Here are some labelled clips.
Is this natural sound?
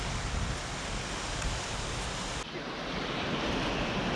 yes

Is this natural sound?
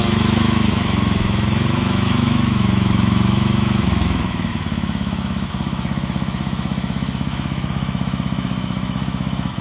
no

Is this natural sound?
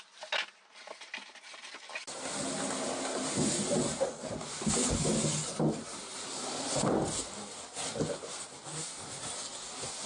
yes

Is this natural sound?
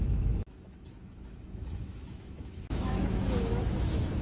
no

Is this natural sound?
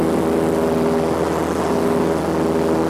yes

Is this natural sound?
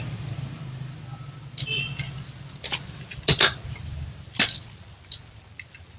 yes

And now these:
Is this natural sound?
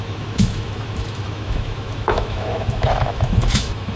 no